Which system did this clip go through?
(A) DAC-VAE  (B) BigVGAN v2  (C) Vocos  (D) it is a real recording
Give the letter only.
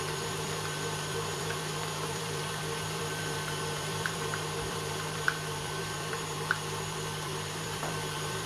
B